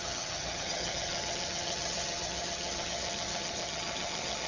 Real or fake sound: fake